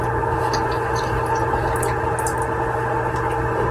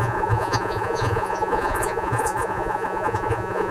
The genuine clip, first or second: first